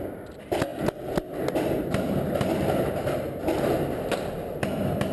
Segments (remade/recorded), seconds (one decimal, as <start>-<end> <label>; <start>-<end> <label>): 0.0-5.1 recorded